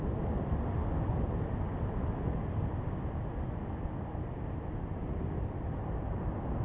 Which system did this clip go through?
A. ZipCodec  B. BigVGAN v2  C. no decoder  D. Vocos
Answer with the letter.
C